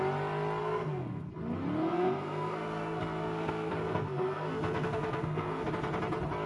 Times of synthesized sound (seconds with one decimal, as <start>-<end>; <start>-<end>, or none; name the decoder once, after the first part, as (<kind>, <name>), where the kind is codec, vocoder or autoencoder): 0.6-1.3 (codec, SNAC); 1.8-5.7